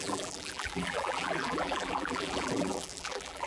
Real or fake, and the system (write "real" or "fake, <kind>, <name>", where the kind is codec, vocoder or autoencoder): fake, vocoder, BigVGAN v2